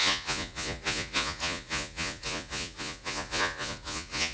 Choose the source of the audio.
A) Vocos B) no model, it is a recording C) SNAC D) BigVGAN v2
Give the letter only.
A